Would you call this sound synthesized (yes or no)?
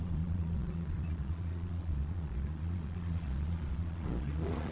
yes